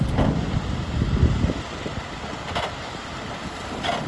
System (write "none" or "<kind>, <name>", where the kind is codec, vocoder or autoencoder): none